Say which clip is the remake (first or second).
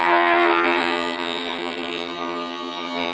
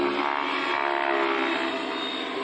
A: first